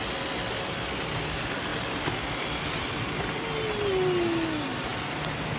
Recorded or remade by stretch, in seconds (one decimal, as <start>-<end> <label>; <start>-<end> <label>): 0.0-5.6 recorded